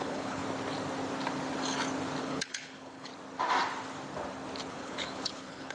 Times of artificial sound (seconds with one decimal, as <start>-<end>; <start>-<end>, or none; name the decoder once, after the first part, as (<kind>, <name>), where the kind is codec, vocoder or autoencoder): 0.0-0.4 (codec, HILCodec); 2.2-3.1; 4.7-5.7